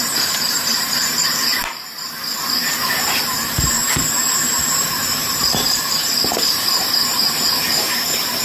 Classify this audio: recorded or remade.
remade